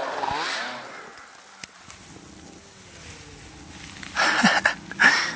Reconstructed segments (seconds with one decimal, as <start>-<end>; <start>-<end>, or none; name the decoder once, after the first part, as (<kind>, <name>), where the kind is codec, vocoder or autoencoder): none